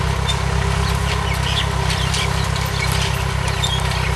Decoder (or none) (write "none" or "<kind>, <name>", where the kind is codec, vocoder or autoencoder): none